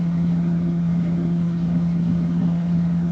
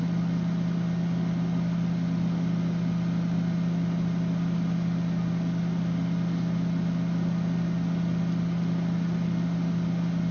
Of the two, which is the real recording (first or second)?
second